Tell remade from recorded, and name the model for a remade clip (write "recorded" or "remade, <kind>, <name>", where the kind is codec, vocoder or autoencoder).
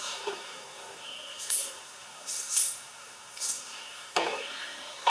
remade, codec, SNAC